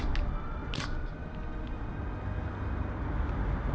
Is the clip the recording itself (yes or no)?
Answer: yes